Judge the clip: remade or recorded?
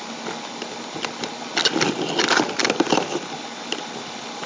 recorded